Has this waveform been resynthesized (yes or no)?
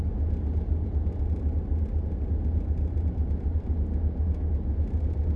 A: no